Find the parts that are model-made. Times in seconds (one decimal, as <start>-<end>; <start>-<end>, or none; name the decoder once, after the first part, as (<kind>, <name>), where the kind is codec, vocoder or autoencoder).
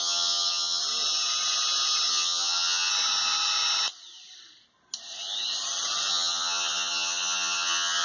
0.0-0.8 (vocoder, HiFi-GAN); 2.1-2.9; 6.1-8.0